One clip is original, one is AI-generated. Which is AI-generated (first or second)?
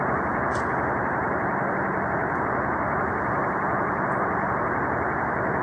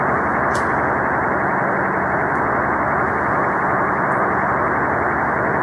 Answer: first